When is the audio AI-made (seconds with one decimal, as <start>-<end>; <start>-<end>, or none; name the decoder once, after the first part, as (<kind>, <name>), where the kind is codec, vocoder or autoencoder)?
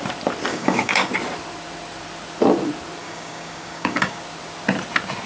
0.5-1.1 (codec, DAC); 3.0-4.2